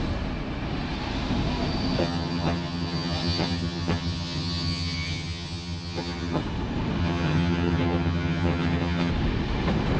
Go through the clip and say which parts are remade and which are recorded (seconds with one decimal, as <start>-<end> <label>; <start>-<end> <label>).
0.0-2.0 recorded; 2.0-6.4 remade; 6.4-7.0 recorded; 7.0-9.1 remade; 9.1-10.0 recorded